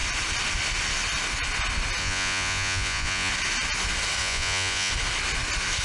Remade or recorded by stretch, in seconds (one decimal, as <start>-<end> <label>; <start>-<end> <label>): 0.0-2.0 recorded; 2.0-3.3 remade; 3.3-4.2 recorded; 4.2-4.9 remade; 4.9-5.8 recorded